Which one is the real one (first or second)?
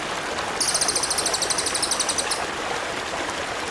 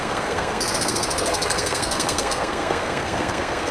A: first